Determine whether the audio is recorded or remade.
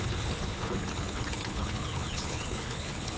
remade